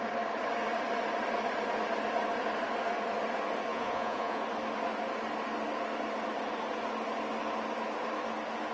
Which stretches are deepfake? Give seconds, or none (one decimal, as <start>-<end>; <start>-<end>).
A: 3.7-4.4